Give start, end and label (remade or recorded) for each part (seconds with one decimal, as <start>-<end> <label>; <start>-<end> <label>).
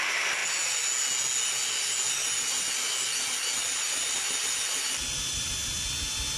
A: 0.0-3.6 recorded; 3.6-5.5 remade; 5.5-6.4 recorded